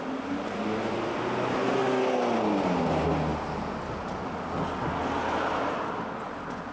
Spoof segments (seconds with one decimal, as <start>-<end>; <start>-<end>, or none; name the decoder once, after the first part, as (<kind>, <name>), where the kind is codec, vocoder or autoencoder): none